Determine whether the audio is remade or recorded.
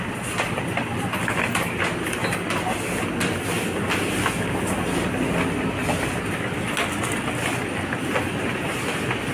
recorded